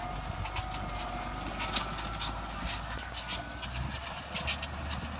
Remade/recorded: recorded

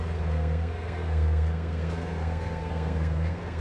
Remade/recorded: remade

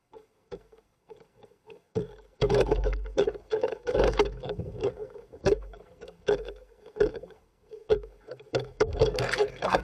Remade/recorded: remade